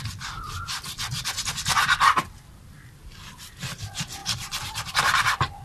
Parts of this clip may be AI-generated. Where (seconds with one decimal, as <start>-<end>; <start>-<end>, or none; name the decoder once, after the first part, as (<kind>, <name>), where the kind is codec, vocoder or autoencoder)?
4.2-4.9 (vocoder, BigVGAN v2)